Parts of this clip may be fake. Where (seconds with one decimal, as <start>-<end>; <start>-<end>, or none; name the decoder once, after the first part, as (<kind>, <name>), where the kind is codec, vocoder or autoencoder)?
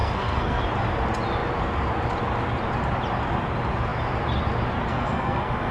0.0-0.6 (codec, SNAC); 4.9-5.7